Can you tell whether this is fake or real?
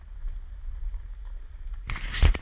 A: real